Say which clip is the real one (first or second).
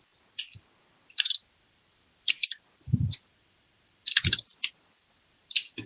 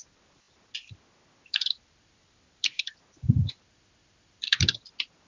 second